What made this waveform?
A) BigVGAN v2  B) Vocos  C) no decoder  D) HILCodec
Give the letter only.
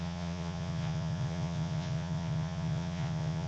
B